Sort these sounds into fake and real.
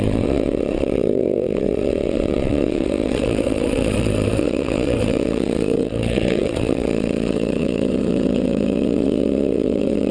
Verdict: fake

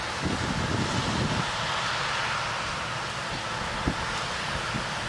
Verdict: real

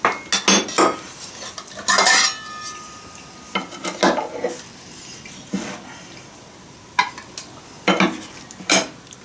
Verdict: real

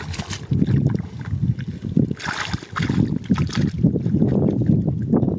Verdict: real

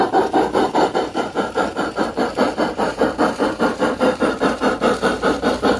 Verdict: fake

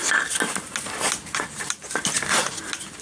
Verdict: real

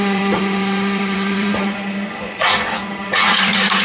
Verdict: fake